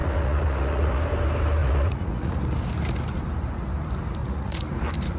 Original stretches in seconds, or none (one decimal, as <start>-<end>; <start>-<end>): 1.0-1.6; 2.4-4.2; 4.7-5.2